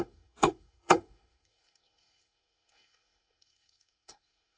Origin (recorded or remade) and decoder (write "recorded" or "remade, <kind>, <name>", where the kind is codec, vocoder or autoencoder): remade, codec, SNAC